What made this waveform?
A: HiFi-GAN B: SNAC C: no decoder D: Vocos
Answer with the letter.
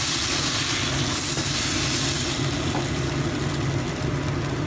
C